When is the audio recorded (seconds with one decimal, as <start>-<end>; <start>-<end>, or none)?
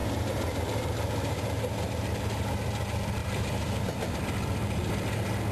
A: 1.4-3.2; 4.0-5.5